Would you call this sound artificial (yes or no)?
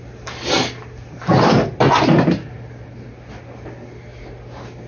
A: no